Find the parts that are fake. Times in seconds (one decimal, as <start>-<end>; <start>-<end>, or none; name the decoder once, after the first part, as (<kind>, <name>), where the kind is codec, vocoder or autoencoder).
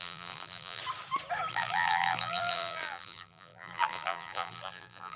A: 0.0-0.8 (vocoder, BigVGAN v2); 1.5-5.2